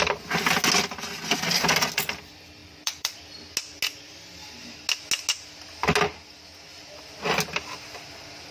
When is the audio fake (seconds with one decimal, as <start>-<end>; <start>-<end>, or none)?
2.6-3.2